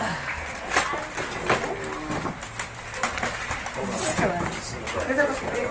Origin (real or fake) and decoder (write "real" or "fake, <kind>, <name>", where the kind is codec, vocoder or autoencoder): real